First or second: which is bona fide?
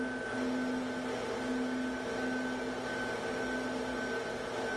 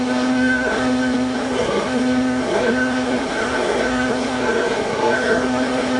first